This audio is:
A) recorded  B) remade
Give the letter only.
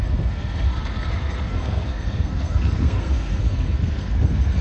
B